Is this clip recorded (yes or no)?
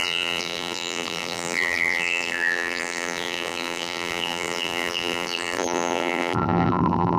no